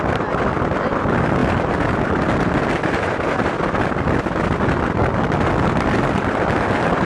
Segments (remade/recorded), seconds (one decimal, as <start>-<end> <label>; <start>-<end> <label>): 0.0-7.0 recorded